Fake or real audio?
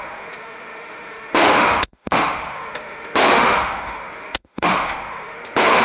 fake